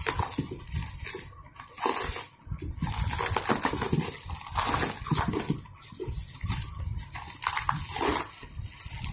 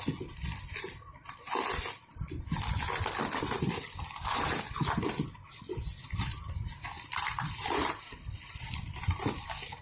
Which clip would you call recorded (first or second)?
first